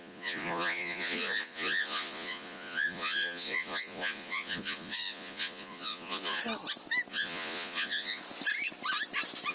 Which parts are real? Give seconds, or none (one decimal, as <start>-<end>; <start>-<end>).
6.4-7.1; 8.2-9.5